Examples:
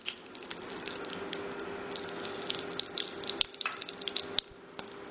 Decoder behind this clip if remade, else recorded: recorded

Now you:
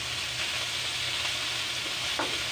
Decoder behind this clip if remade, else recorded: recorded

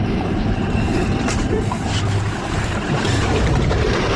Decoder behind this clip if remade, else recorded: remade, vocoder, BigVGAN v2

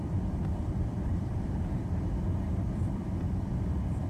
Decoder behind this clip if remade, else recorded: remade, vocoder, BigVGAN v2